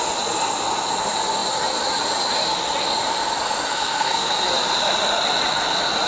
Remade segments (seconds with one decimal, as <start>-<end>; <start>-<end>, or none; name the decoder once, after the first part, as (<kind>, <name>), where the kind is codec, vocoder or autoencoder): 3.7-4.4 (codec, SNAC)